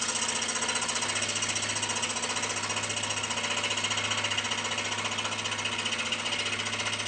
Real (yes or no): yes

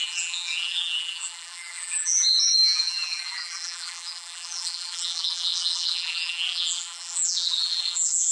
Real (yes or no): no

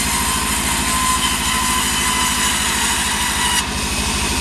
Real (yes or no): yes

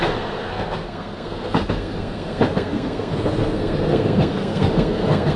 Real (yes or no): no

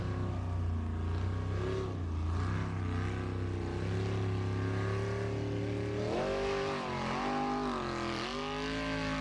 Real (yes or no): yes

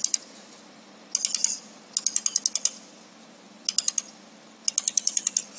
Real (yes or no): yes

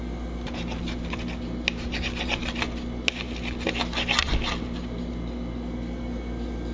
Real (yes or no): yes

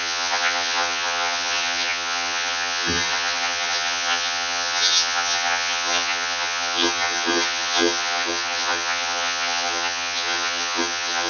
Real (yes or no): no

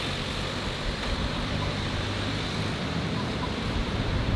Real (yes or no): no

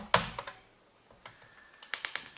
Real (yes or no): yes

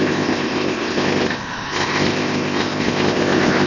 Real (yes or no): no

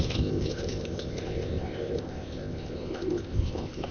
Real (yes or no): no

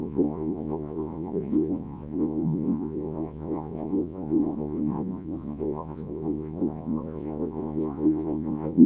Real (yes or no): no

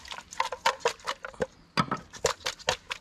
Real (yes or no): yes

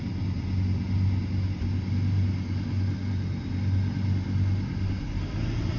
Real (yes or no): yes